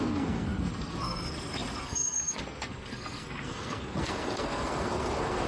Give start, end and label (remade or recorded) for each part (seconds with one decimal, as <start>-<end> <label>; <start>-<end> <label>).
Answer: 0.0-5.5 remade